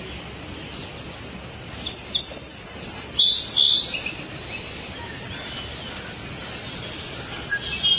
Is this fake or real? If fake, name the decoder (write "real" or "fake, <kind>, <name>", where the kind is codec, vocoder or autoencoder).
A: real